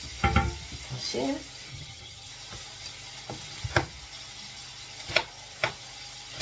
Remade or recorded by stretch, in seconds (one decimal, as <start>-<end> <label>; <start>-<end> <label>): 0.0-1.7 recorded; 1.7-2.3 remade; 2.3-6.4 recorded